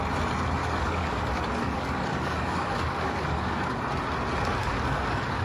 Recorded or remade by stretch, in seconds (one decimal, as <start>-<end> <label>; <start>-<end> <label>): 0.0-0.6 recorded; 0.6-3.8 remade; 3.8-4.6 recorded; 4.6-5.4 remade